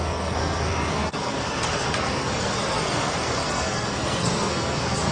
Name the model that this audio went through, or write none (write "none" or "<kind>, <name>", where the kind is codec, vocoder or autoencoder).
codec, SNAC